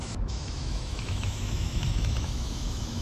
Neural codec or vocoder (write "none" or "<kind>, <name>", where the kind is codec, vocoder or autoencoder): autoencoder, DAC-VAE